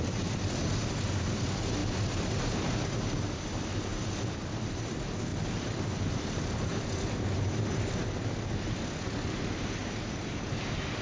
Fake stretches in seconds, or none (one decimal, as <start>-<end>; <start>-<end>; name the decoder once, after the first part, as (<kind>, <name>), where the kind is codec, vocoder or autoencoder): 1.8-2.4 (vocoder, BigVGAN v2); 5.3-7.1; 9.8-10.3